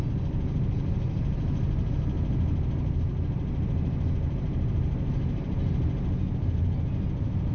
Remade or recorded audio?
recorded